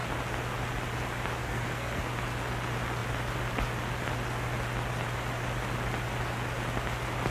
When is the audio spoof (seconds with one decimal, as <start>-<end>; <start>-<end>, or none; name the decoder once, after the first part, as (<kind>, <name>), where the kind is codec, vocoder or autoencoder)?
1.4-2.1 (codec, SNAC)